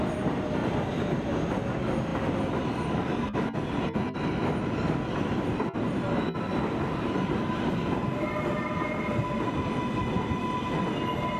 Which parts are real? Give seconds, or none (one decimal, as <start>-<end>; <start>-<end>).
0.0-0.6; 1.2-11.4